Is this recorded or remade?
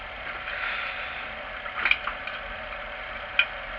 recorded